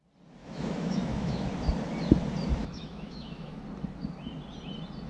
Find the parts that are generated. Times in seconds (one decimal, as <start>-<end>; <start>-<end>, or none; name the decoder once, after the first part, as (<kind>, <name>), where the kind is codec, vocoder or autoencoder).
0.4-1.5 (autoencoder, DAC-VAE); 2.6-3.6

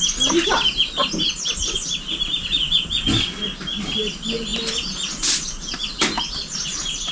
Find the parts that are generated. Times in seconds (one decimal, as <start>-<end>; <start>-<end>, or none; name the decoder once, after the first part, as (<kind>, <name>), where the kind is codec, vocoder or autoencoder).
none

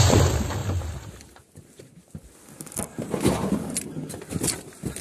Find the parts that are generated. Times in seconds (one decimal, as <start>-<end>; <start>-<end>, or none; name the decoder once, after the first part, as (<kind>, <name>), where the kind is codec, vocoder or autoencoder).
none

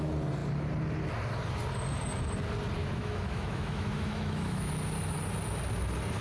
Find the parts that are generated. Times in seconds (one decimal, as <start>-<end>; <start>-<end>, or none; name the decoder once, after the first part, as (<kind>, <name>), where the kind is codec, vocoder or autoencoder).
2.8-4.7 (autoencoder, DAC-VAE)

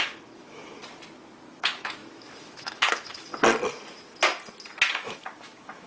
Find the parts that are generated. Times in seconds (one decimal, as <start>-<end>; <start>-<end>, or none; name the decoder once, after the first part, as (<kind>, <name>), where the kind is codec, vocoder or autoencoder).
0.0-0.8 (autoencoder, DAC-VAE); 1.5-3.3; 4.9-5.9